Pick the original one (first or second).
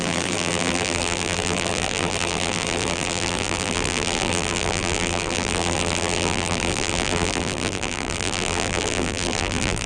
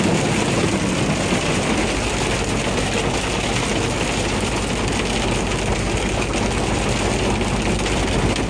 second